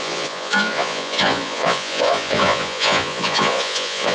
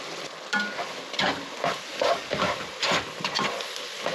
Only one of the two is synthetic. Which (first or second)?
first